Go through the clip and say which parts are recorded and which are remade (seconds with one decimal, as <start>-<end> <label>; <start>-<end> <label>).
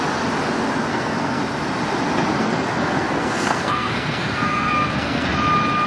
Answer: 0.0-0.9 recorded; 0.9-1.4 remade; 1.4-2.3 recorded; 2.3-5.3 remade; 5.3-5.9 recorded